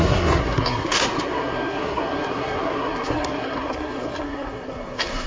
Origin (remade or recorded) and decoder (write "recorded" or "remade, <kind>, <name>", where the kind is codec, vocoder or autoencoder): remade, codec, SNAC